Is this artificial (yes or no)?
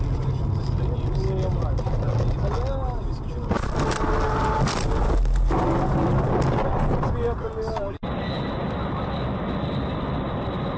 no